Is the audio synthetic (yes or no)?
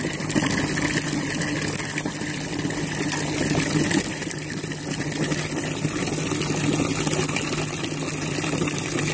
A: no